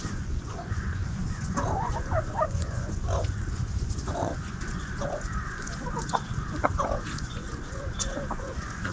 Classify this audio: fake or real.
fake